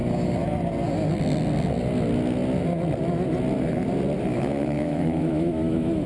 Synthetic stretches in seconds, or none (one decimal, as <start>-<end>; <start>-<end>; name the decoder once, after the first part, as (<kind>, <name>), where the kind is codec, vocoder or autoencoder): 4.3-6.1 (autoencoder, DAC-VAE)